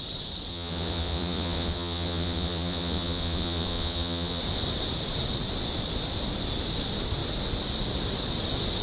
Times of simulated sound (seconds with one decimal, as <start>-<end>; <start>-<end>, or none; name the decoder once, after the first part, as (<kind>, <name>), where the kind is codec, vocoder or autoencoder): 0.5-4.4 (vocoder, Vocos)